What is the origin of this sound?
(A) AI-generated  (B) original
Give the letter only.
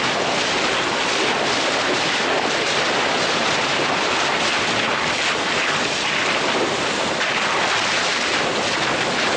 B